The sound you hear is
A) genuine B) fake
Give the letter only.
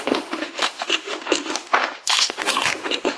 B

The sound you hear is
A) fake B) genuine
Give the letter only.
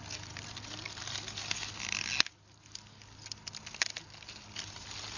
B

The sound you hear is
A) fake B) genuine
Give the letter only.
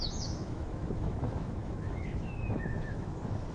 A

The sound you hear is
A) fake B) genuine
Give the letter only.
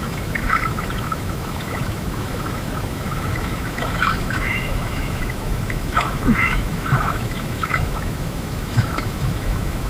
A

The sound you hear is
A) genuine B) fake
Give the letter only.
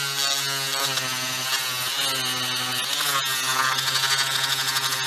A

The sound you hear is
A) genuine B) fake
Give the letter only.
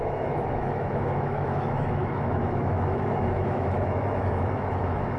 B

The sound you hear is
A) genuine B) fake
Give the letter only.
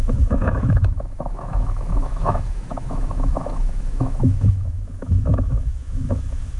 B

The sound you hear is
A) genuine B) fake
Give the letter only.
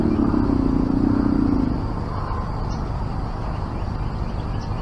A